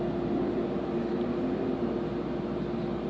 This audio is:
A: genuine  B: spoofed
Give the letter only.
A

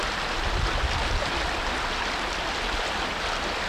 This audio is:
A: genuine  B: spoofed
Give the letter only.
A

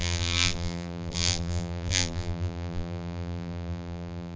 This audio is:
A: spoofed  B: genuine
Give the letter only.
A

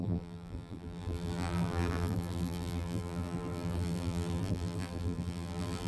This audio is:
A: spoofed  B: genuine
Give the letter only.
A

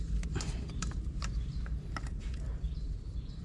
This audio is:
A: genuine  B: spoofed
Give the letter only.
B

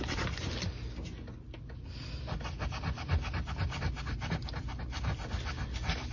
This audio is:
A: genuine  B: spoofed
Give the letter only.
A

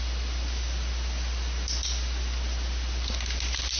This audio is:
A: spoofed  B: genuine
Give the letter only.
B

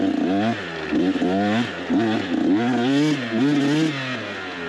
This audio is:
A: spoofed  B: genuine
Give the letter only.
B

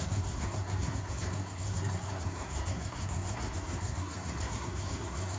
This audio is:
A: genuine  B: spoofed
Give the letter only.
B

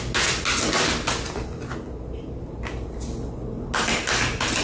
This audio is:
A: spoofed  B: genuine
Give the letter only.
B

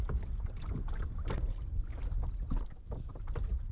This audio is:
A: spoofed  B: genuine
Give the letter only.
B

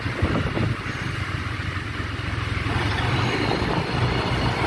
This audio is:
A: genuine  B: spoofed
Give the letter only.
A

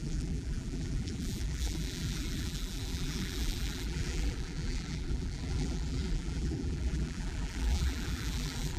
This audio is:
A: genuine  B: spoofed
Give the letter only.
B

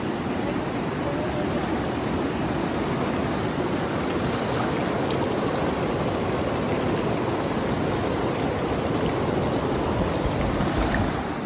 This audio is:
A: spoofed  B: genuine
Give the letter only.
B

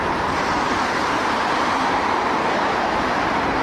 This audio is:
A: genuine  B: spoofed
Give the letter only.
B